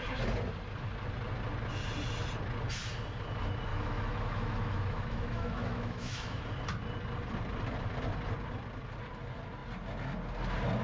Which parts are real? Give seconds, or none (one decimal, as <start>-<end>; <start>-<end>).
0.0-3.7; 6.4-10.8